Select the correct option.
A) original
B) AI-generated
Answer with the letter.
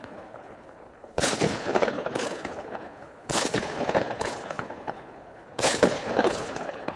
B